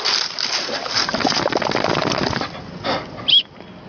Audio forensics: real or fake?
real